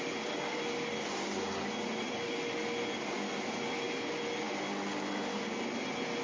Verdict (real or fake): real